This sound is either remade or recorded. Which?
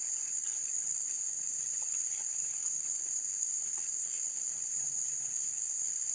remade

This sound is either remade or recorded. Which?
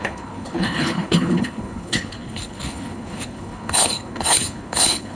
remade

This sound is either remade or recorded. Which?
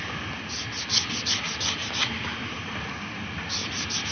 recorded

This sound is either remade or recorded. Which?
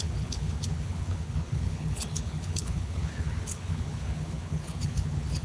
remade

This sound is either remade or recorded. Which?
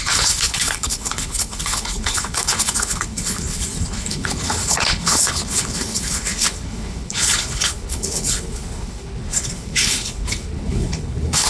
remade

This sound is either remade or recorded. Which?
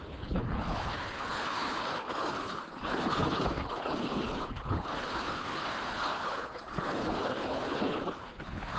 remade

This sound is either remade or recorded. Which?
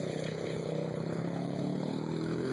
remade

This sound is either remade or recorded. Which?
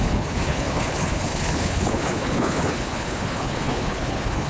remade